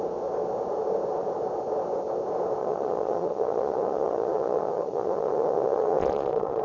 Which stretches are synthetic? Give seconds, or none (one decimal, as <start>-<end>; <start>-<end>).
2.6-6.6